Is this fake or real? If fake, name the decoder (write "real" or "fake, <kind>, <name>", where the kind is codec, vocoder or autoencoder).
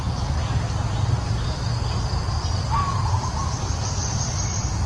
real